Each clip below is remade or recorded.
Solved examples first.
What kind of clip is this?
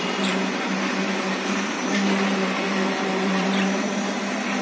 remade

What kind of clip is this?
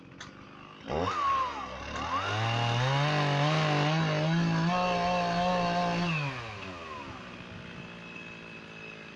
recorded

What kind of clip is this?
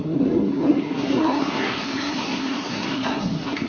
remade